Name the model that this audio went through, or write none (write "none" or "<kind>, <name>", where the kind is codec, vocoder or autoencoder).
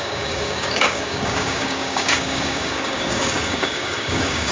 codec, DAC